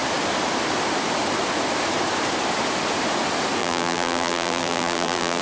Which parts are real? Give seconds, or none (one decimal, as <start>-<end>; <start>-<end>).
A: 0.0-3.6